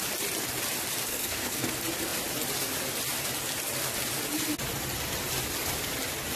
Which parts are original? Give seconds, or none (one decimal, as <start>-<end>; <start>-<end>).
0.0-1.1; 1.7-6.4